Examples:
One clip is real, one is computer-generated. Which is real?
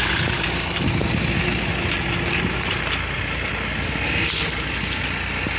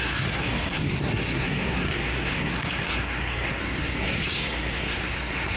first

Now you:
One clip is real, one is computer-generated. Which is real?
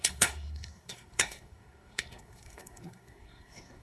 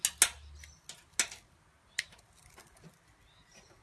second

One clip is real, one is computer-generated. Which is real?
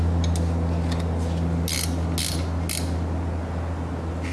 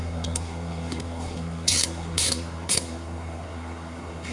first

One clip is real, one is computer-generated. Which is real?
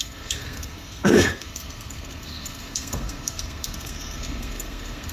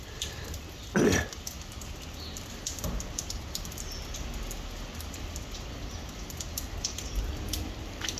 second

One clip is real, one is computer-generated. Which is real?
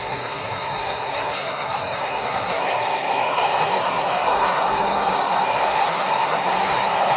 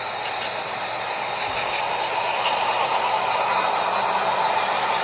second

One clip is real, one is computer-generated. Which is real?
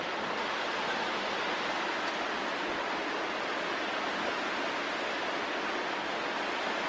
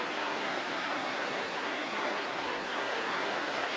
first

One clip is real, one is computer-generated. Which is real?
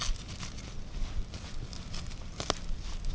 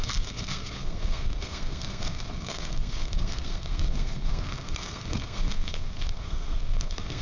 first